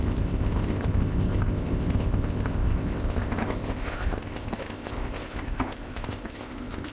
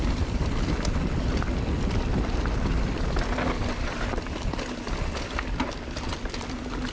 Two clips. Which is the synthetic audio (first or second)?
first